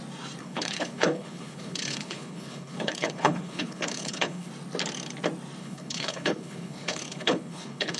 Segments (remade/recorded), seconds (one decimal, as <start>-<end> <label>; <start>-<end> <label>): 0.0-0.4 recorded; 0.4-4.5 remade; 4.5-5.6 recorded; 5.6-8.0 remade